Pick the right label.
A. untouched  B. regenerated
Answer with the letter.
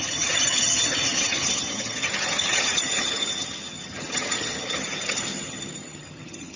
B